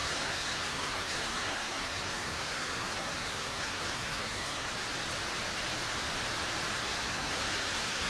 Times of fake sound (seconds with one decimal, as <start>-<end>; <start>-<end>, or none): 0.0-4.7; 6.9-8.1